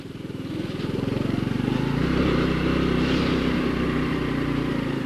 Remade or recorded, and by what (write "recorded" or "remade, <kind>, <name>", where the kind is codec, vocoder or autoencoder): remade, vocoder, BigVGAN v2